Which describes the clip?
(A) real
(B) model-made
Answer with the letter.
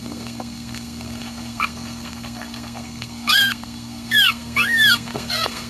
B